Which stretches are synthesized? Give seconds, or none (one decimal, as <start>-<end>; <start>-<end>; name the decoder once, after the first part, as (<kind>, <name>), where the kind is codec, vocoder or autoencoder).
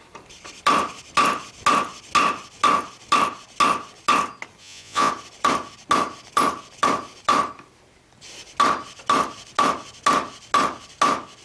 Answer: 4.6-5.1 (vocoder, Vocos)